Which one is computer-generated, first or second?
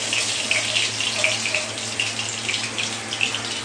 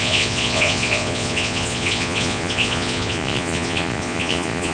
second